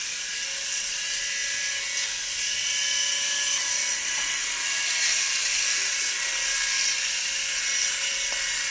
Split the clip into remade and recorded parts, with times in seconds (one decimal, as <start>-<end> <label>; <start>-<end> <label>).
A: 0.0-8.7 recorded